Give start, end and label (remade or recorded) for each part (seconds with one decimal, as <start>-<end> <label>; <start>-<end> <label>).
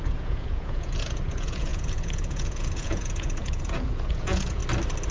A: 0.0-4.6 remade; 4.6-5.1 recorded